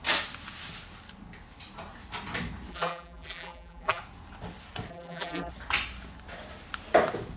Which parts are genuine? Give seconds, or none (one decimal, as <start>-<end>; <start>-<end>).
0.0-2.7; 4.0-4.9; 5.5-7.4